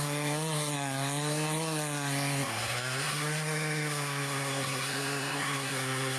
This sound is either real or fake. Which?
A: fake